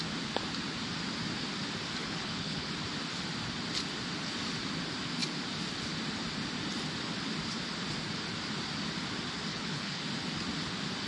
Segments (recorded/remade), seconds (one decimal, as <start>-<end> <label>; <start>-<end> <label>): 0.0-2.0 recorded; 2.0-2.7 remade; 2.7-9.5 recorded; 9.5-10.0 remade; 10.0-11.1 recorded